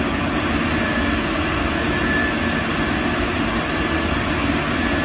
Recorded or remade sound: recorded